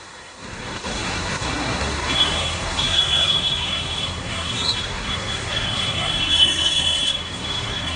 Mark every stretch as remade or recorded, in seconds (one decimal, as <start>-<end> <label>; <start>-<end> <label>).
0.0-8.0 remade